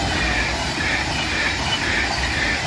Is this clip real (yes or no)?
yes